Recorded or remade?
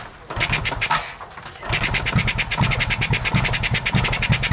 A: recorded